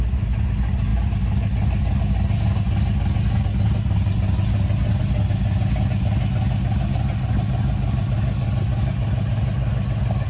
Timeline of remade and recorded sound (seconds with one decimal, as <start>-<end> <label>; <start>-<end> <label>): 0.0-10.3 recorded